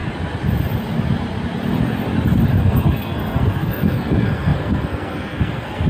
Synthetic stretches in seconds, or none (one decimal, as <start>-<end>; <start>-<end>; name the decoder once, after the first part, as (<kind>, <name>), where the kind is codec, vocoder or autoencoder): 2.6-5.9 (codec, SNAC)